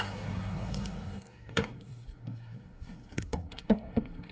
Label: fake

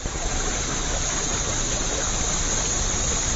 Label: real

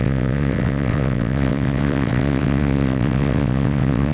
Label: fake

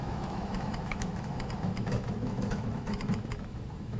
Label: fake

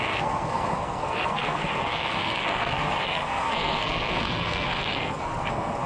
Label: fake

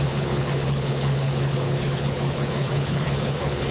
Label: fake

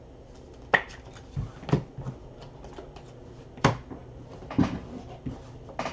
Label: real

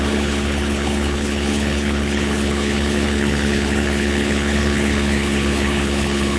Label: fake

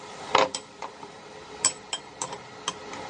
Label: real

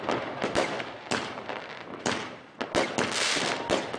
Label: real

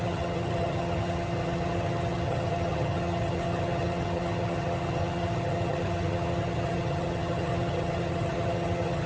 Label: fake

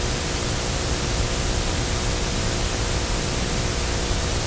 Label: real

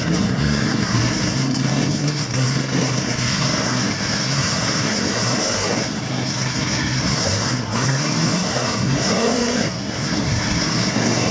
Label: fake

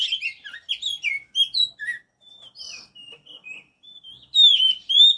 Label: real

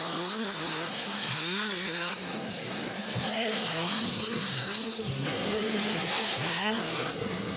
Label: fake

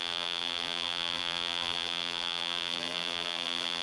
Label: fake